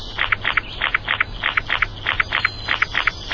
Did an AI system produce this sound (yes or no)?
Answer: no